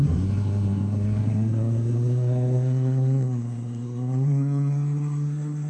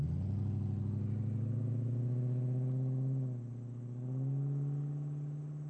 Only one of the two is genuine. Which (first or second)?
second